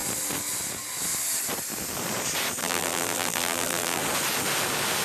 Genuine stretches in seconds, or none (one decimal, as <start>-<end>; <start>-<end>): 0.0-2.6; 4.0-5.0